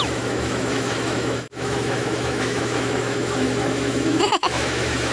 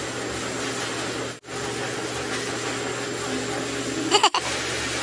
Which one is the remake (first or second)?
first